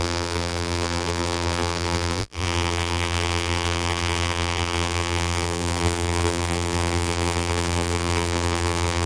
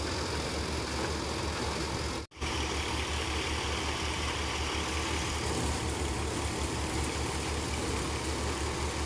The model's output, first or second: first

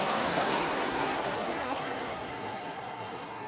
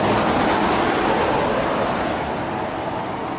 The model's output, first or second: first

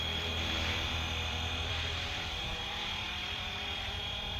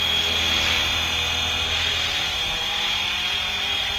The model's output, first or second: first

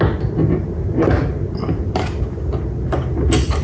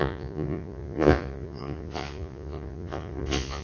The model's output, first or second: second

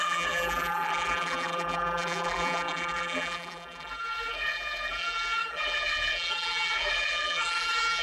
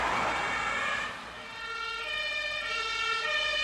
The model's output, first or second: first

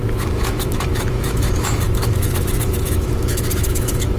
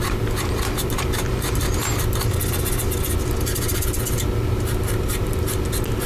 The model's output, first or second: first